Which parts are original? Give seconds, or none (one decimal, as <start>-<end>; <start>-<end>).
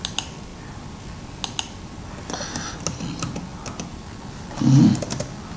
0.0-5.6